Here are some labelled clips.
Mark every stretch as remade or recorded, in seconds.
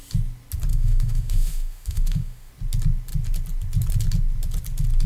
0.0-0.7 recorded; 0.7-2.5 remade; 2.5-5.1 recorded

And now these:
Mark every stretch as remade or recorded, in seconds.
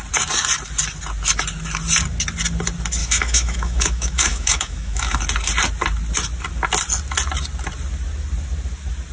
0.0-3.0 recorded; 3.0-5.2 remade; 5.2-9.1 recorded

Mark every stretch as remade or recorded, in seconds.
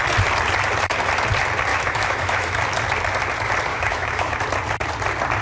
0.0-1.7 recorded; 1.7-2.6 remade; 2.6-3.7 recorded; 3.7-4.4 remade; 4.4-5.4 recorded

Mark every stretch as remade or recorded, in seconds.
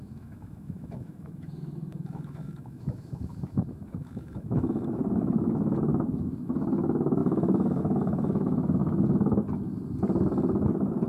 0.0-8.8 remade; 8.8-11.1 recorded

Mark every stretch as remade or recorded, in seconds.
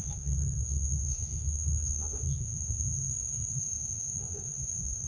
0.0-5.1 remade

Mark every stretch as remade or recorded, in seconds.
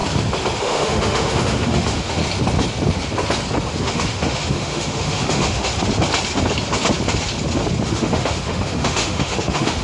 0.0-0.6 recorded; 0.6-2.2 remade; 2.2-3.8 recorded; 3.8-5.7 remade; 5.7-7.9 recorded; 7.9-9.8 remade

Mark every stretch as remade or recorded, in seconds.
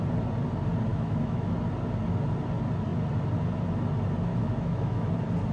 0.0-0.9 recorded; 0.9-1.5 remade; 1.5-4.3 recorded; 4.3-5.1 remade; 5.1-5.5 recorded